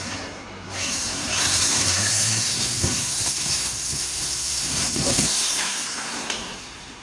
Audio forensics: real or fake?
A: fake